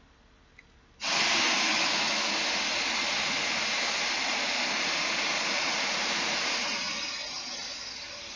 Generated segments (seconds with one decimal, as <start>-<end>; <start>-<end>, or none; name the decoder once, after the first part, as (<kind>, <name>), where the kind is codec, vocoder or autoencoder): 1.7-2.3 (autoencoder, DAC-VAE)